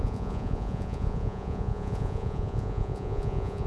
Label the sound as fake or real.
fake